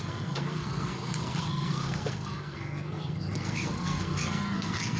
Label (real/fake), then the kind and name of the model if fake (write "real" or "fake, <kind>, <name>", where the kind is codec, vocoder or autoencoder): fake, codec, SNAC